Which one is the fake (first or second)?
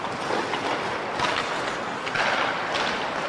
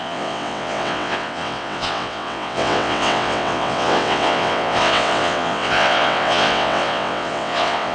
second